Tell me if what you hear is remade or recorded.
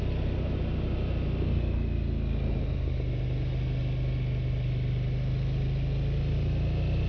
recorded